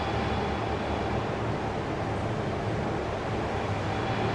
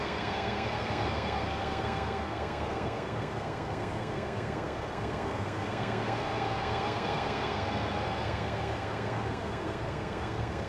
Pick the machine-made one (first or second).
second